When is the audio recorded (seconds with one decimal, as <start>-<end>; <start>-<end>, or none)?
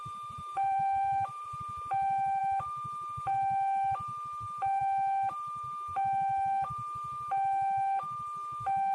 1.6-8.9